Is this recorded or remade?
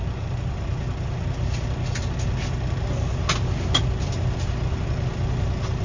recorded